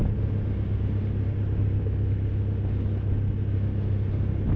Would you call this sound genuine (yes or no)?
yes